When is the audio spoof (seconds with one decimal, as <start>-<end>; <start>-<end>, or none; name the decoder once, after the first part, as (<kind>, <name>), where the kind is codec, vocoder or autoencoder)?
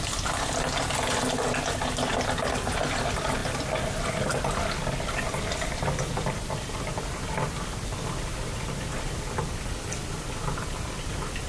none